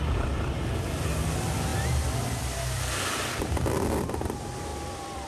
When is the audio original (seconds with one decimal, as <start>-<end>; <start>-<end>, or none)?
0.0-4.7